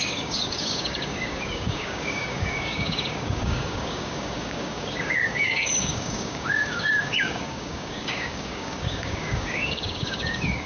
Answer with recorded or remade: remade